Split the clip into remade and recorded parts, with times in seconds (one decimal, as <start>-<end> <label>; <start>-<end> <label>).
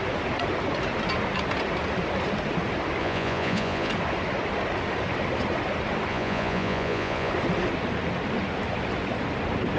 0.0-3.0 recorded; 3.0-3.9 remade; 3.9-6.1 recorded; 6.1-7.3 remade; 7.3-9.8 recorded